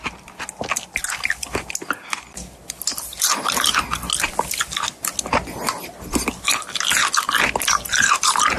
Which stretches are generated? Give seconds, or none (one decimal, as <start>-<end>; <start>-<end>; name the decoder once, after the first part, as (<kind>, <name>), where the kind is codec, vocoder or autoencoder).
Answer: none